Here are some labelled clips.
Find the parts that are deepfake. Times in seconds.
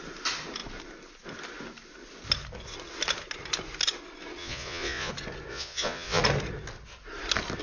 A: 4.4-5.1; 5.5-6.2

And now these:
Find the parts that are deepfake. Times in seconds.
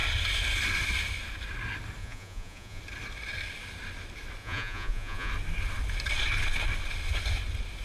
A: 2.0-2.8; 4.4-5.3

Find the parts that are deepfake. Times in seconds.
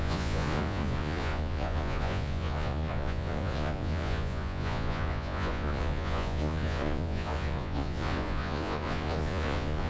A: 0.0-9.9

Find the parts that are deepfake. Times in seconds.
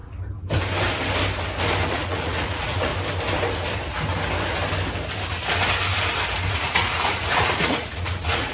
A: 1.9-2.9; 6.5-8.5